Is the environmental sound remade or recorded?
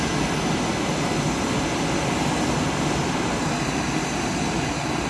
recorded